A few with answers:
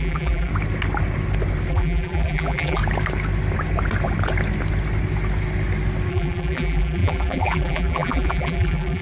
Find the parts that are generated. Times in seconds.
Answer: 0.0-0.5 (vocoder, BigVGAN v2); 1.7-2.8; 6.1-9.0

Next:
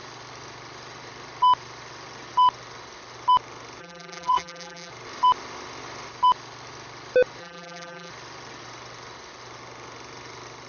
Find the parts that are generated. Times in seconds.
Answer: 3.8-4.9 (vocoder, BigVGAN v2); 7.4-8.1